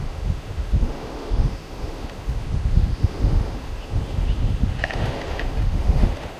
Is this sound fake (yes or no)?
yes